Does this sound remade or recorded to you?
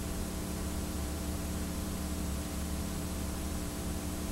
remade